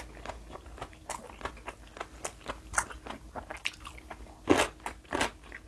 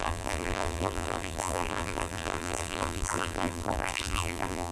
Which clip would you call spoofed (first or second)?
second